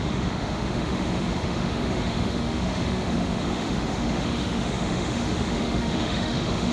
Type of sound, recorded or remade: remade